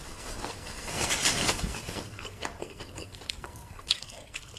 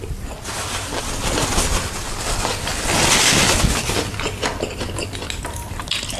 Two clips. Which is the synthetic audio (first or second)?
first